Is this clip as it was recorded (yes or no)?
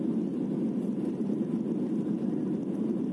yes